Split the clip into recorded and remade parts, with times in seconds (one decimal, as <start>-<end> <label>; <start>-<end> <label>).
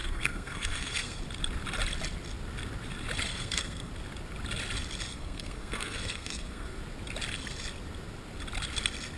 0.0-1.2 remade; 1.2-3.3 recorded; 3.3-3.9 remade; 3.9-5.1 recorded; 5.1-6.8 remade; 6.8-9.2 recorded